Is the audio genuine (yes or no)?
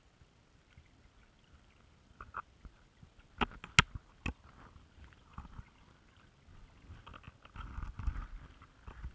yes